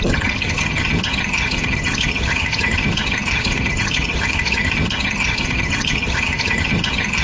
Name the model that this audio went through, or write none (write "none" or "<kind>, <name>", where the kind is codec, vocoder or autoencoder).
vocoder, HiFi-GAN